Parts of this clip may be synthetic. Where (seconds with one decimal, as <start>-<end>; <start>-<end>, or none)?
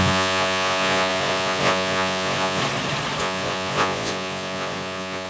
0.0-2.6; 3.2-5.3